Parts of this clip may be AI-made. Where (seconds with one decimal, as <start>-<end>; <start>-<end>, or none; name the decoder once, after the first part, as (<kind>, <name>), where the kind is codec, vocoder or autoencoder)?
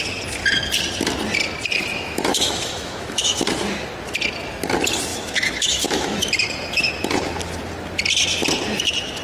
1.9-3.4 (autoencoder, DAC-VAE); 5.1-6.3